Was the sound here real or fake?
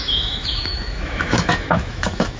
fake